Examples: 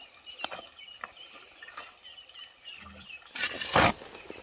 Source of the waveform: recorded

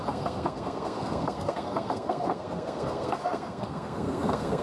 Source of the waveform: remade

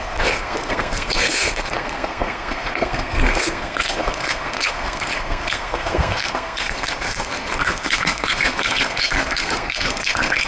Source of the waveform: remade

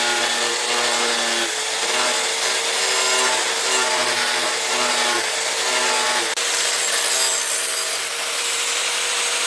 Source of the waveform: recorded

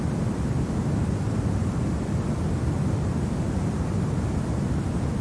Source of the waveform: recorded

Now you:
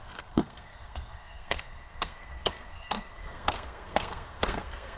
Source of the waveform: remade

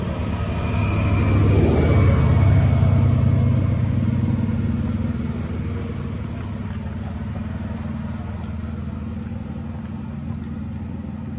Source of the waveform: recorded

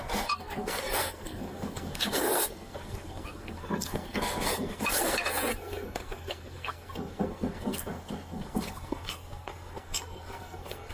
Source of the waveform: remade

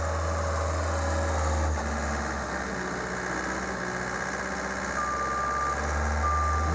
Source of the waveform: recorded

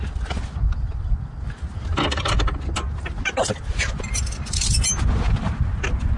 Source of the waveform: recorded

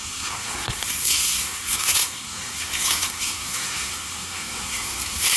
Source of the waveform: remade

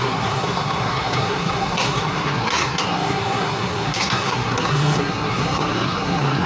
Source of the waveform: remade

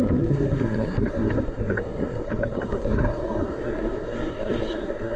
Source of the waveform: remade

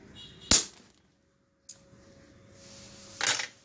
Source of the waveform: recorded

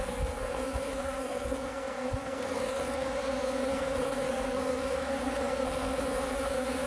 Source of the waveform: remade